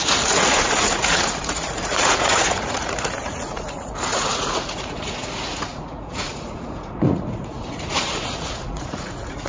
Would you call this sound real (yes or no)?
no